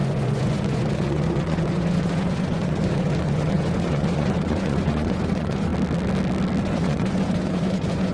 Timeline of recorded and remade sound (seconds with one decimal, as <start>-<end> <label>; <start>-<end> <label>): 0.0-5.7 remade; 5.7-6.6 recorded; 6.6-8.1 remade